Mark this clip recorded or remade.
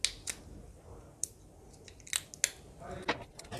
recorded